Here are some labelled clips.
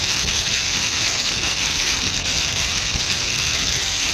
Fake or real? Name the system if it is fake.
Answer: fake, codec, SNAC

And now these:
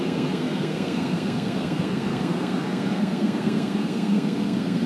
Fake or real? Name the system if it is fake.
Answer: fake, codec, SNAC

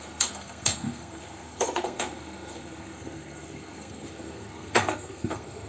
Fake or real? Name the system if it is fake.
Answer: fake, codec, SNAC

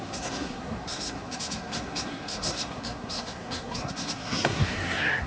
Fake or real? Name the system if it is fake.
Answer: fake, codec, SNAC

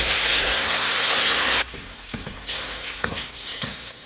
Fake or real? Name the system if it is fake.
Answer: fake, codec, SNAC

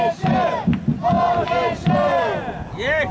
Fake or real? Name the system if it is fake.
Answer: real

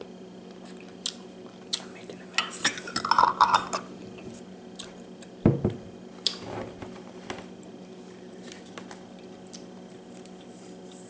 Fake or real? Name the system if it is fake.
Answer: real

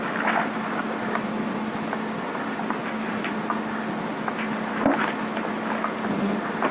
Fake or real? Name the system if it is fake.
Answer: real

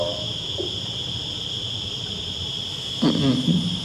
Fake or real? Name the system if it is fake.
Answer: real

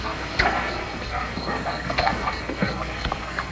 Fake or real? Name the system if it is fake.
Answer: fake, codec, SNAC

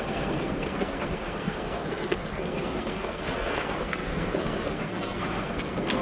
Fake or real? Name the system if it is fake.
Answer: fake, codec, SNAC